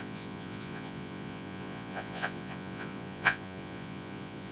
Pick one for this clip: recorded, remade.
remade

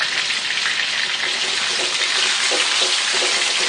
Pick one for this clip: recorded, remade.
recorded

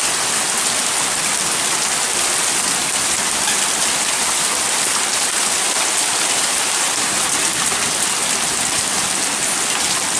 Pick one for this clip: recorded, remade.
recorded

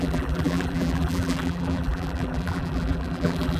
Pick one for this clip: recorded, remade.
remade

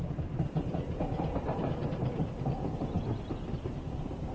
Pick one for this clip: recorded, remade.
recorded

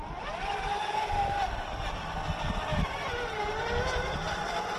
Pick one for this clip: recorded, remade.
recorded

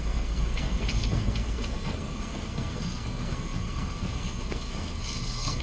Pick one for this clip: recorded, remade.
remade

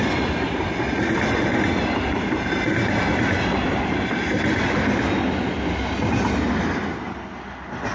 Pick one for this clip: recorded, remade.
recorded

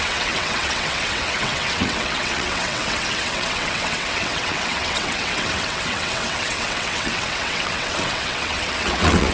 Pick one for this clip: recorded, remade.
remade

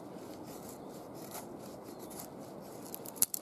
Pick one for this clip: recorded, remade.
recorded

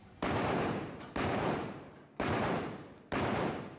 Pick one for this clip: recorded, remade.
remade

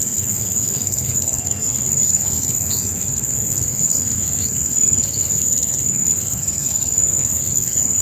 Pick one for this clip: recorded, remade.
remade